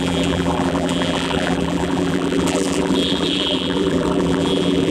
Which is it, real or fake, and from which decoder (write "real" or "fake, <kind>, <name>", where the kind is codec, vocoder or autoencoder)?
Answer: fake, vocoder, BigVGAN v2